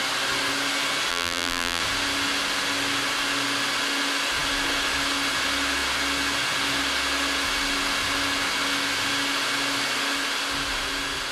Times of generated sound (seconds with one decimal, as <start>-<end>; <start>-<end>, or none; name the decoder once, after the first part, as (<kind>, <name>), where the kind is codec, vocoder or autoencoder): 1.1-1.8 (vocoder, BigVGAN v2)